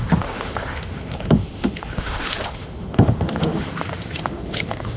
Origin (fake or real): fake